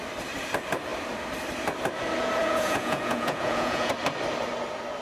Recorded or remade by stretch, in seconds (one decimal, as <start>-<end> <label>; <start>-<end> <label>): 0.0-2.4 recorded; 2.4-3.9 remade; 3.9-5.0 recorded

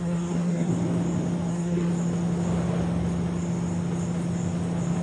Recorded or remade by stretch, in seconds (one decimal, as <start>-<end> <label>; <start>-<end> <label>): 0.0-0.7 remade; 0.7-1.5 recorded; 1.5-1.9 remade; 1.9-5.0 recorded

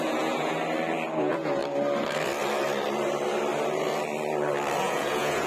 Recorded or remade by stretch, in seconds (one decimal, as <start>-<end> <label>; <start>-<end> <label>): 0.0-0.6 remade; 0.6-1.2 recorded; 1.2-1.6 remade; 1.6-4.8 recorded; 4.8-5.5 remade

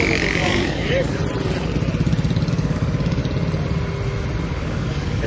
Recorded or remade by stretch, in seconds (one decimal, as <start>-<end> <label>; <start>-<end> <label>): 0.0-1.2 remade; 1.2-2.5 recorded; 2.5-3.2 remade; 3.2-4.5 recorded; 4.5-5.3 remade

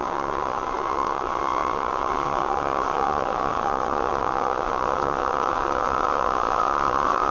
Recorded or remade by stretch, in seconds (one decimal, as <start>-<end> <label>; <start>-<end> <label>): 0.0-7.3 remade